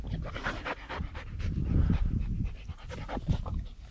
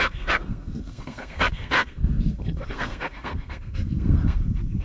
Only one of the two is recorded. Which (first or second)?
first